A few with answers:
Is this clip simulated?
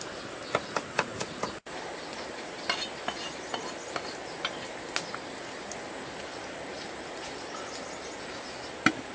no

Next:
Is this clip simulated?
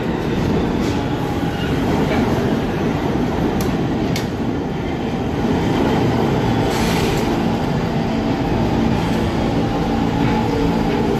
no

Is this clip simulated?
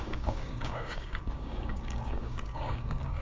yes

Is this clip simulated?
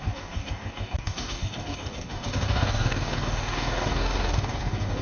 yes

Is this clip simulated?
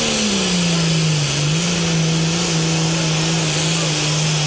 no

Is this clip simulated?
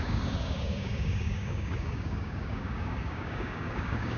yes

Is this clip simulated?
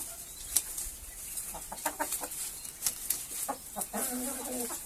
no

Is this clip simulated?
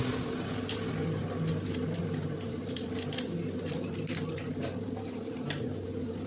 no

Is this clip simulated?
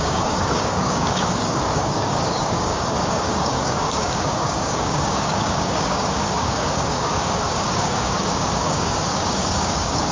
yes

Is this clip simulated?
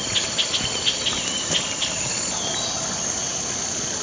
no